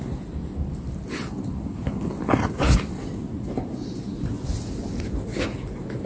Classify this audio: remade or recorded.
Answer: recorded